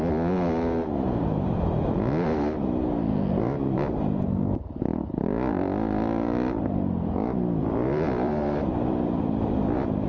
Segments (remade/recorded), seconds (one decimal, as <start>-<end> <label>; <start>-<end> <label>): 0.0-4.9 recorded; 4.9-10.1 remade